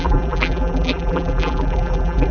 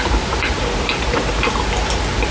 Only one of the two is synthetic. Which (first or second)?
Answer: first